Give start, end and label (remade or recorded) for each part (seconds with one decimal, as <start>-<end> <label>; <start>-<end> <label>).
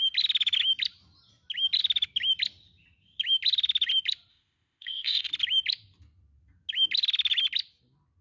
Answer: 0.0-4.3 recorded; 4.3-5.3 remade; 5.3-8.2 recorded